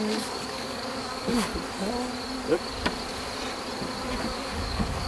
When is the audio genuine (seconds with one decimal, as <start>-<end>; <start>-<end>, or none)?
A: 1.5-4.2